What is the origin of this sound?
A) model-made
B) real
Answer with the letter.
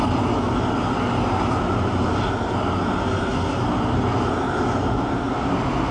B